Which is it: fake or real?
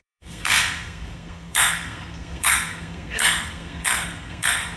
fake